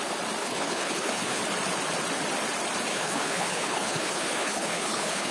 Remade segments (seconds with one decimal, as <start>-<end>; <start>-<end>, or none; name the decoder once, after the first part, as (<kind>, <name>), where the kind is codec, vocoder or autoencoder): 0.4-1.4 (codec, HILCodec); 2.9-5.3